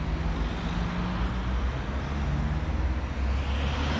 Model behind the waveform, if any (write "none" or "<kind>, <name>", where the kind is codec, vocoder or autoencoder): none